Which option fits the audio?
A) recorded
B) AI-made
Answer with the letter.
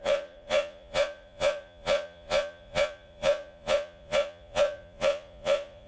B